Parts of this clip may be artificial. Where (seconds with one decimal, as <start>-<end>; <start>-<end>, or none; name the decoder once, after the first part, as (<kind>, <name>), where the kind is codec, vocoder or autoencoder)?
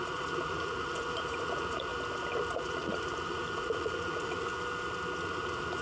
0.0-1.9 (vocoder, Vocos); 2.5-4.5; 5.2-5.8